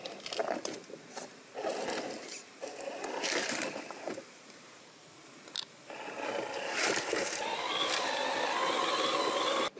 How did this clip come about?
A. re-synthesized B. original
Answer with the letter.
B